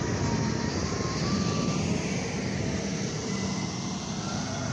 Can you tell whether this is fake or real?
real